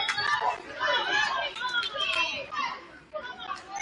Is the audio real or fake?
real